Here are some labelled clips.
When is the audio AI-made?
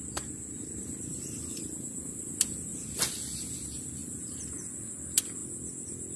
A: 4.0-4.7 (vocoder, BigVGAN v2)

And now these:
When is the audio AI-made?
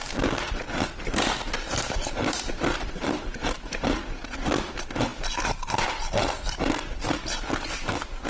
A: 2.0-2.5 (vocoder, BigVGAN v2)